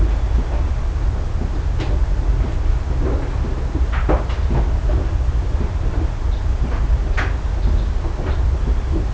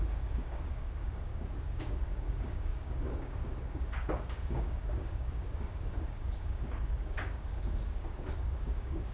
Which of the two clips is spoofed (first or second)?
second